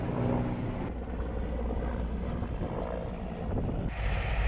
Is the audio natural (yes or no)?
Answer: yes